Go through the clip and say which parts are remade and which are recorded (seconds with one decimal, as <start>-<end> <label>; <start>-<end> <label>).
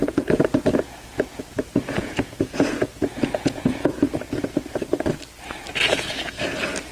0.0-3.9 remade; 3.9-5.7 recorded; 5.7-6.4 remade; 6.4-6.9 recorded